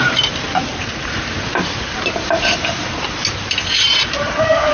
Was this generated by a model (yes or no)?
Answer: yes